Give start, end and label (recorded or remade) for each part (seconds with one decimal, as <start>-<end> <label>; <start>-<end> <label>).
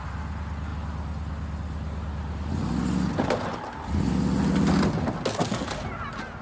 0.0-6.4 recorded